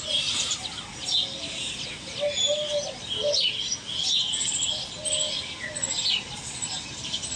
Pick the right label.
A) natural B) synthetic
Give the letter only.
A